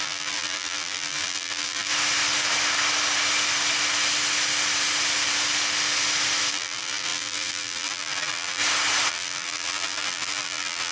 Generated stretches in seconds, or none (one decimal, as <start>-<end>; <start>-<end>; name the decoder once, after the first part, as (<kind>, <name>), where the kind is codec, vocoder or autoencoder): 0.0-1.9 (vocoder, BigVGAN v2); 6.5-8.6; 9.1-10.9